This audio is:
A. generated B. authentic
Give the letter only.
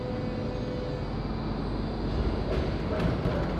B